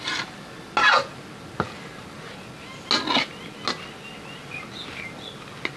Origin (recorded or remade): recorded